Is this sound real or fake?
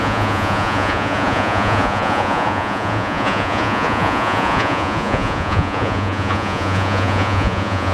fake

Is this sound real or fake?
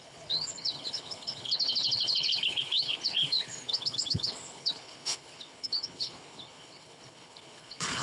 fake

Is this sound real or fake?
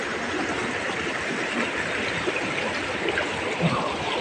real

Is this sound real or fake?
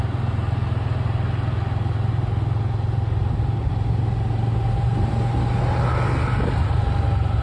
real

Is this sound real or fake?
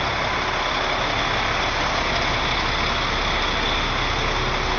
real